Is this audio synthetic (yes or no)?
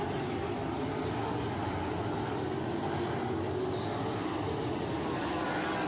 no